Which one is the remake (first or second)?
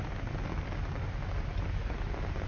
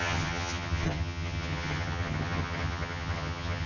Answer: second